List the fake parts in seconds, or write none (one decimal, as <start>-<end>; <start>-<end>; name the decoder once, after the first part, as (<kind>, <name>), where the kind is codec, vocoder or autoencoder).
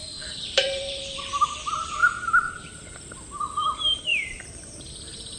0.0-1.2 (vocoder, BigVGAN v2); 2.0-2.7; 4.1-4.9